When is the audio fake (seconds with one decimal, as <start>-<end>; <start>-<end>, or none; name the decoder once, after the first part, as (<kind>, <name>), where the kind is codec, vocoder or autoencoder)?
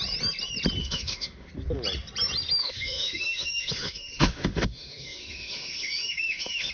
0.8-1.5 (autoencoder, DAC-VAE); 2.6-6.7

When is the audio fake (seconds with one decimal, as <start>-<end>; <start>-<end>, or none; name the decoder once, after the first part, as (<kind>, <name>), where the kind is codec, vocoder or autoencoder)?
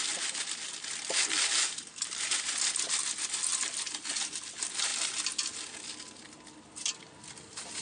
none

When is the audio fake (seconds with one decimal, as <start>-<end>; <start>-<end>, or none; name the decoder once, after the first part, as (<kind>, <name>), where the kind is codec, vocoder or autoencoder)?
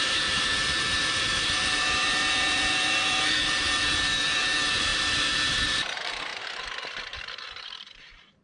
0.0-8.4 (vocoder, BigVGAN v2)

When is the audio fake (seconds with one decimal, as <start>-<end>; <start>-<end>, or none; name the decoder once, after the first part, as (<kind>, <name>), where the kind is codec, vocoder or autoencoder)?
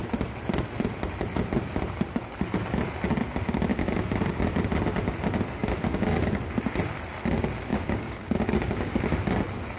3.7-4.4 (codec, DAC); 5.6-6.4; 7.7-9.0